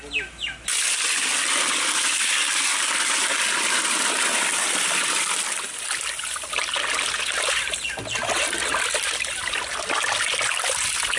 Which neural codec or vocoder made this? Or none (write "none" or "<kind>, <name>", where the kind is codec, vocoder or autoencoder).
none